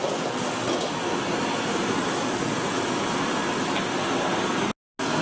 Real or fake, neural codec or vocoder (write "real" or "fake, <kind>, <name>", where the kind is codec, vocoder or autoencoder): real